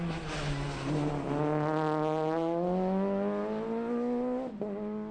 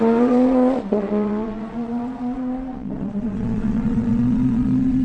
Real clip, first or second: first